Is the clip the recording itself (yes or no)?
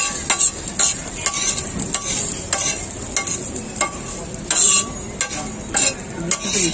yes